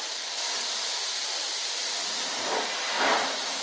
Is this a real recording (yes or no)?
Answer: no